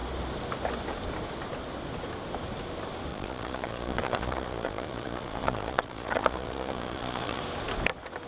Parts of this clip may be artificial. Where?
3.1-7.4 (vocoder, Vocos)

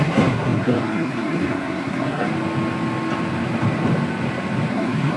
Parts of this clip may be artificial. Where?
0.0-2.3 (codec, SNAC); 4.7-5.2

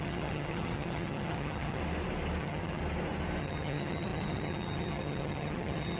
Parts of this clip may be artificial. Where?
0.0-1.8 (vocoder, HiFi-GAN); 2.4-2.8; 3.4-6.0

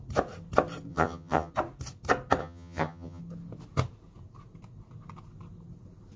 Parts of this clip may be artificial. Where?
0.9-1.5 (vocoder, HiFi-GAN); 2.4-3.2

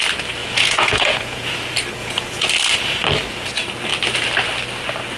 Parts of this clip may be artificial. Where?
0.4-1.5 (vocoder, Vocos); 2.0-2.5